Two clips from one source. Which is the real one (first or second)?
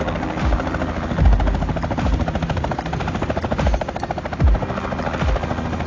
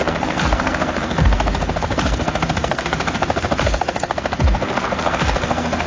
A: first